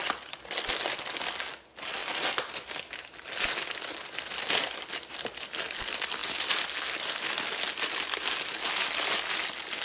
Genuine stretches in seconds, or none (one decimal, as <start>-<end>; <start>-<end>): 0.0-9.8